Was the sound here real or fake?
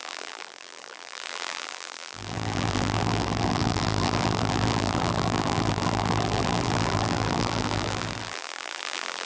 fake